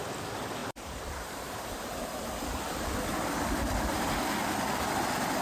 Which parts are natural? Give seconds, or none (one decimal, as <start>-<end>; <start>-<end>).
0.0-0.6; 2.9-5.4